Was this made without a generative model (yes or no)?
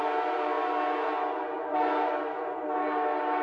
yes